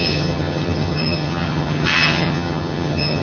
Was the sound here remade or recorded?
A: remade